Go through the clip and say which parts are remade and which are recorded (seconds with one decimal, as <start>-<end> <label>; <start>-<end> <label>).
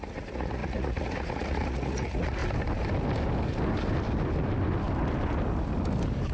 0.0-2.4 remade; 2.4-6.3 recorded